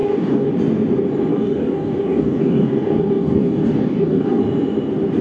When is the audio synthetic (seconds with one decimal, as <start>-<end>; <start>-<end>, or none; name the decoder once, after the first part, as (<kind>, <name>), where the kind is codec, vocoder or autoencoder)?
0.0-0.5 (codec, DAC); 1.3-4.4